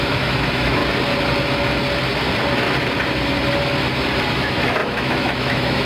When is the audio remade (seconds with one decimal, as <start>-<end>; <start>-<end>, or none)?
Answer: 0.0-0.8; 4.3-5.9